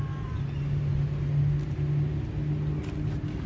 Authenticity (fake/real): real